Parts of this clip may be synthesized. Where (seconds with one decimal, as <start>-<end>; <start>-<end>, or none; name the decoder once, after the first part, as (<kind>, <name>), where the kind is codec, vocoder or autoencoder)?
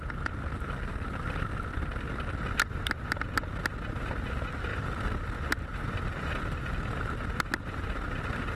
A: none